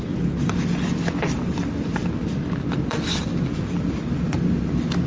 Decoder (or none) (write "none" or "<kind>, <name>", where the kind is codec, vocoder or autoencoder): vocoder, BigVGAN v2